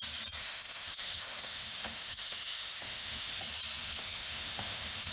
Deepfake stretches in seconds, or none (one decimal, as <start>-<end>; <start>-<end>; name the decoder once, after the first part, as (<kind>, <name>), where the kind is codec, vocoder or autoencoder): 0.4-3.4 (autoencoder, DAC-VAE); 3.8-5.1